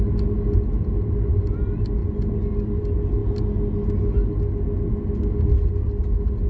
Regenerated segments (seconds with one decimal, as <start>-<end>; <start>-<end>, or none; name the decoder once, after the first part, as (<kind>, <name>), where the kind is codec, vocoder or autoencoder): none